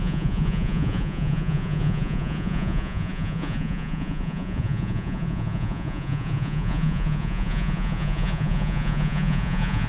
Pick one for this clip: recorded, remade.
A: remade